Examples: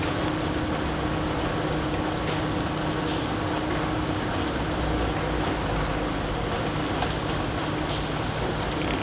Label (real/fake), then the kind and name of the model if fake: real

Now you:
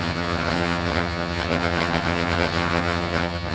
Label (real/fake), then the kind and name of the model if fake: fake, vocoder, HiFi-GAN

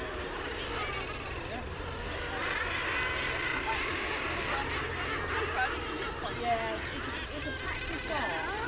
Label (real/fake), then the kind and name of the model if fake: real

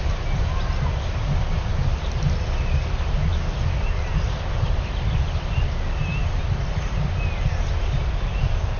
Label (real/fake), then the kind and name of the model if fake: real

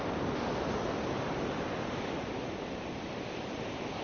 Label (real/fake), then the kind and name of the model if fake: real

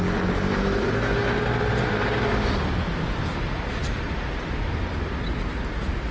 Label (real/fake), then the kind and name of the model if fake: real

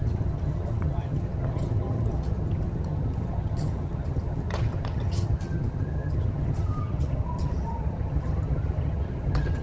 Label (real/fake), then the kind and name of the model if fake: fake, vocoder, HiFi-GAN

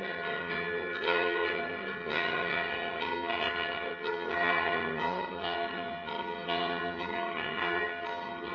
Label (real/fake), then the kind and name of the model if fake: fake, vocoder, HiFi-GAN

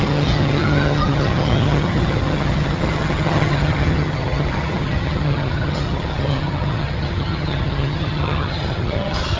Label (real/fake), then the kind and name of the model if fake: fake, vocoder, HiFi-GAN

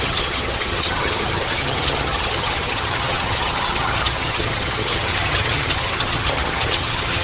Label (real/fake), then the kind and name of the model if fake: fake, vocoder, HiFi-GAN